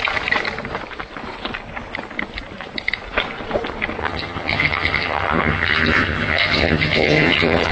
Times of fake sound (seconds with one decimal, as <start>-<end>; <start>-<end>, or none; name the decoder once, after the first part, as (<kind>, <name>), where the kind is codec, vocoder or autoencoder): 4.0-7.7 (vocoder, HiFi-GAN)

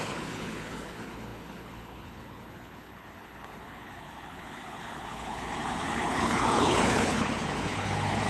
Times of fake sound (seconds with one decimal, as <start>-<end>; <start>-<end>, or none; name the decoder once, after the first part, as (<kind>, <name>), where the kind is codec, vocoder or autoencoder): 0.0-8.3 (codec, HILCodec)

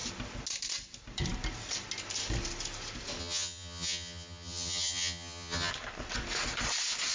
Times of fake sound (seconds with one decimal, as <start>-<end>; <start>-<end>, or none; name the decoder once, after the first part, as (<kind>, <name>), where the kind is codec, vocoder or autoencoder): 3.2-5.7 (vocoder, HiFi-GAN)